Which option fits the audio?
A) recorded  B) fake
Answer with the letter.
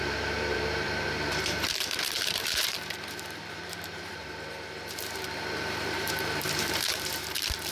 B